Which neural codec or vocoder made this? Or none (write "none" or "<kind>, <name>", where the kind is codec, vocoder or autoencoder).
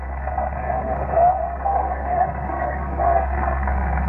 codec, SNAC